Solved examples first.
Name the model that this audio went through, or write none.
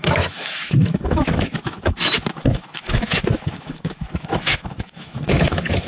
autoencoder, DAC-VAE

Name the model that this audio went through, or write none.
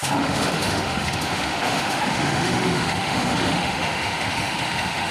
autoencoder, DAC-VAE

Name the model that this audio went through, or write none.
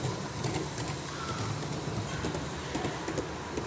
none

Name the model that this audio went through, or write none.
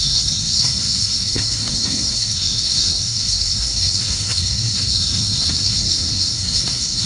codec, SNAC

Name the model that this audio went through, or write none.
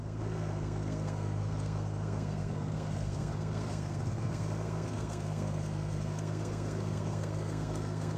codec, SNAC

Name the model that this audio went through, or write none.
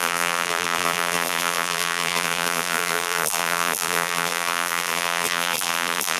vocoder, BigVGAN v2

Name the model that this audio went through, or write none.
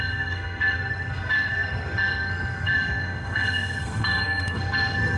codec, SNAC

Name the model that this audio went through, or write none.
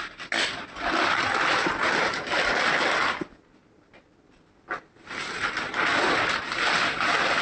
none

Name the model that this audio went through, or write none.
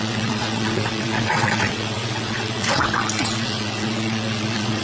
vocoder, WaveNeXt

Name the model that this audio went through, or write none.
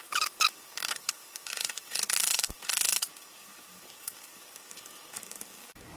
codec, DAC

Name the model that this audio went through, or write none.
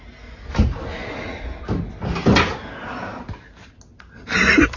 none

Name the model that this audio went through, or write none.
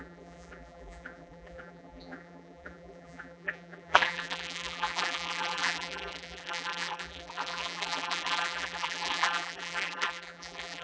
vocoder, BigVGAN v2